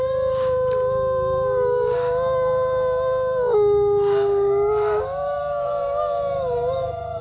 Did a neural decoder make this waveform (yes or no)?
yes